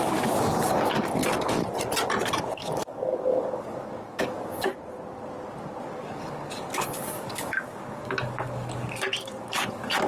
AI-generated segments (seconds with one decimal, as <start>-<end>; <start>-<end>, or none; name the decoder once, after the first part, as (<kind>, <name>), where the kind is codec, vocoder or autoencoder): 0.0-1.2 (codec, DAC); 2.5-4.7; 5.8-10.1